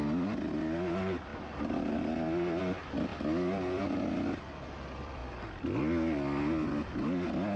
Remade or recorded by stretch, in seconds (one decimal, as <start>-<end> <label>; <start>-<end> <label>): 0.0-1.3 remade; 1.3-2.6 recorded; 2.6-5.2 remade; 5.2-7.6 recorded